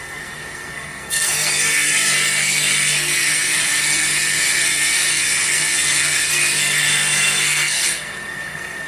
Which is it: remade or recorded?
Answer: remade